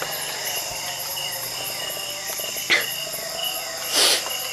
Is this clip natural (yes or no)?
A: yes